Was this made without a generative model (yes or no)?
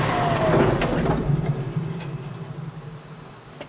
yes